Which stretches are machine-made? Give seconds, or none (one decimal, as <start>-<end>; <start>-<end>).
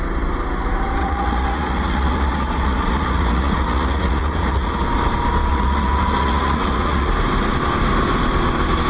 1.0-4.7; 5.5-7.1